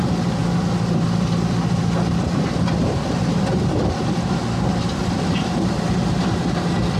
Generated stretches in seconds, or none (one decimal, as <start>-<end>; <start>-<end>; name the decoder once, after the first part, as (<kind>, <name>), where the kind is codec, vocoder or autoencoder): none